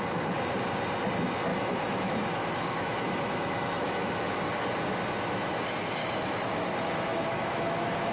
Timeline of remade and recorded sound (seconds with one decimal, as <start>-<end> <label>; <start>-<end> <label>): 0.0-1.5 recorded; 1.5-4.4 remade; 4.4-6.0 recorded; 6.0-8.1 remade